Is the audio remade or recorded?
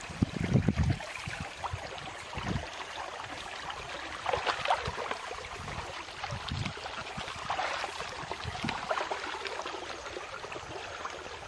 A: recorded